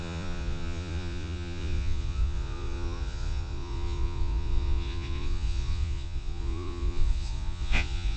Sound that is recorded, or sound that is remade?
remade